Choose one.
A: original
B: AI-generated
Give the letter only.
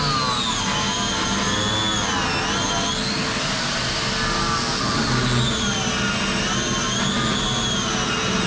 A